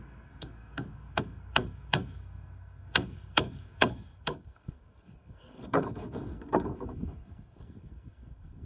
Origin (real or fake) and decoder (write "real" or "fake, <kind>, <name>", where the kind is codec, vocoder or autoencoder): fake, codec, SNAC